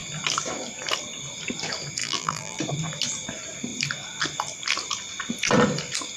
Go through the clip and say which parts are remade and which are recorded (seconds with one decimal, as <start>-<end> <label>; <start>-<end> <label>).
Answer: 0.0-2.0 recorded; 2.0-2.6 remade; 2.6-6.2 recorded